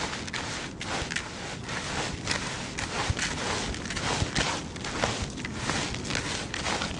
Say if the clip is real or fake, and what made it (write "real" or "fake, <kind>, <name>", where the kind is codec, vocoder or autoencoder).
real